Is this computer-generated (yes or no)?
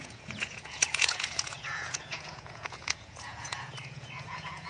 yes